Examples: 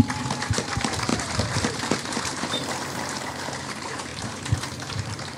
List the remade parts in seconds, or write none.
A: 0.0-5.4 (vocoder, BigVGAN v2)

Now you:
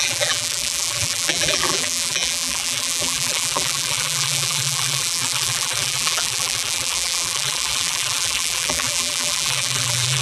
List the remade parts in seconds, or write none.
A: 0.0-10.2 (vocoder, BigVGAN v2)

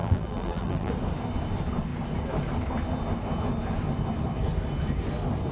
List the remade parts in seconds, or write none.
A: 0.0-0.9 (vocoder, BigVGAN v2)

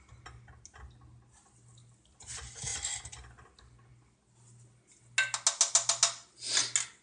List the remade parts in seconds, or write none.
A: none